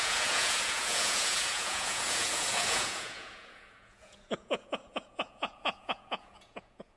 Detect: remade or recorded remade